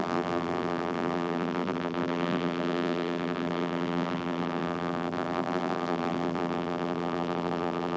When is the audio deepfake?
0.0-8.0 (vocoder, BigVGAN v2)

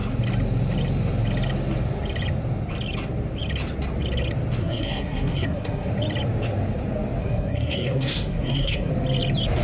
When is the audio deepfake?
4.6-5.9 (codec, SNAC); 7.2-8.9

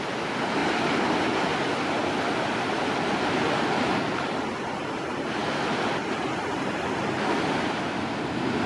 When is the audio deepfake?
none

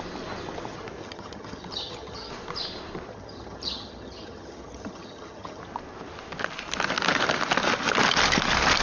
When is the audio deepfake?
1.0-2.3 (vocoder, HiFi-GAN); 3.1-5.6

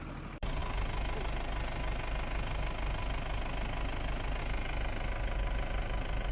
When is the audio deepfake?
none